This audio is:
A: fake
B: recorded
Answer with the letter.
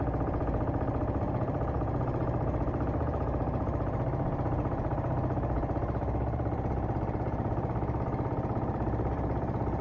A